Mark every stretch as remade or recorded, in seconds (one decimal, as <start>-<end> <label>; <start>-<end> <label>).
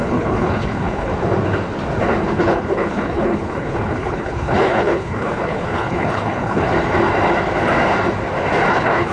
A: 0.0-1.1 remade; 1.1-2.2 recorded; 2.2-6.7 remade; 6.7-8.7 recorded; 8.7-9.1 remade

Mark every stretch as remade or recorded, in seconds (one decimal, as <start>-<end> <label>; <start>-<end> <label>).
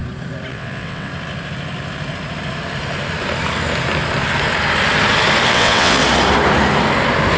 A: 0.0-0.5 recorded; 0.5-1.1 remade; 1.1-5.5 recorded; 5.5-6.0 remade; 6.0-7.4 recorded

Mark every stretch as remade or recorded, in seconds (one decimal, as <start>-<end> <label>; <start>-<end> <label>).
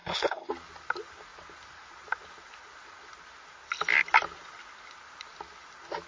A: 0.0-0.5 remade; 0.5-6.1 recorded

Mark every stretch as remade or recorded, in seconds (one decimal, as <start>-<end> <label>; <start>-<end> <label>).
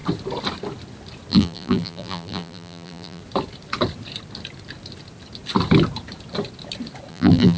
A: 0.0-1.3 recorded; 1.3-3.2 remade; 3.2-7.1 recorded; 7.1-7.6 remade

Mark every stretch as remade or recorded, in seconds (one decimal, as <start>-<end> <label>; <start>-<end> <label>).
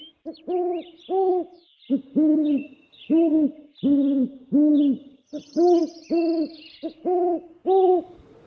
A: 0.0-2.3 recorded; 2.3-3.3 remade; 3.3-4.7 recorded; 4.7-5.8 remade; 5.8-8.5 recorded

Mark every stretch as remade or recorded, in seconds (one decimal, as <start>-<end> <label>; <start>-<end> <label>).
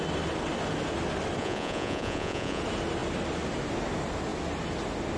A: 0.0-1.4 recorded; 1.4-2.6 remade; 2.6-5.2 recorded